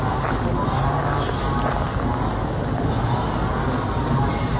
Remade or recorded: recorded